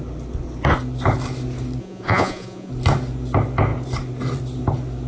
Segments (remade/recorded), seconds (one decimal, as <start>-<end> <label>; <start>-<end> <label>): 0.0-1.8 recorded; 1.8-2.7 remade; 2.7-5.1 recorded